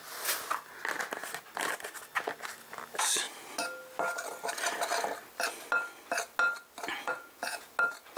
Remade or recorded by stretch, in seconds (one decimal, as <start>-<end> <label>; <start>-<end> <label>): 0.0-6.9 recorded; 6.9-7.7 remade; 7.7-8.2 recorded